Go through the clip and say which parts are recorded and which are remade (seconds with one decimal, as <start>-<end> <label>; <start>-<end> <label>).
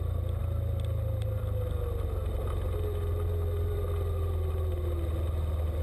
0.0-5.8 recorded